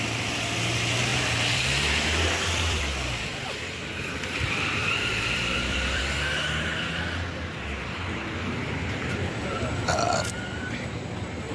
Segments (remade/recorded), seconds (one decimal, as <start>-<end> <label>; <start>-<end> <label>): 0.0-1.1 recorded; 1.1-2.8 remade; 2.8-4.8 recorded; 4.8-6.0 remade; 6.0-9.4 recorded; 9.4-9.9 remade; 9.9-11.5 recorded